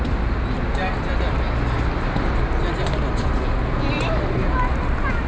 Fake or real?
real